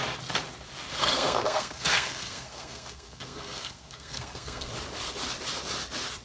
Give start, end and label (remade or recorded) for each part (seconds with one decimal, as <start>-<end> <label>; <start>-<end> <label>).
0.0-1.0 recorded; 1.0-4.7 remade; 4.7-6.2 recorded